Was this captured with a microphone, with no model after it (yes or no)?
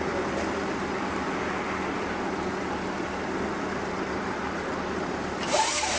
no